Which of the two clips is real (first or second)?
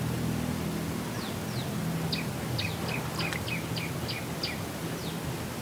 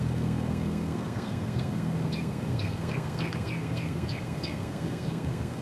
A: first